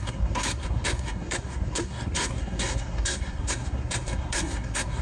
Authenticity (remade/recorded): remade